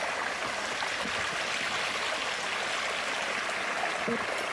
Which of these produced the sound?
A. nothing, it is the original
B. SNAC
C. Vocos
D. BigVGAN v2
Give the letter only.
A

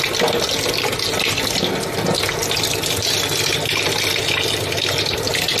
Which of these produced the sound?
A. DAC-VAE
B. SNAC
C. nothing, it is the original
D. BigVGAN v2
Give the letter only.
C